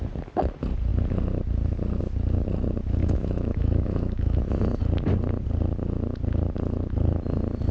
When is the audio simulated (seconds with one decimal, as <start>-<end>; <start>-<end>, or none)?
3.0-4.8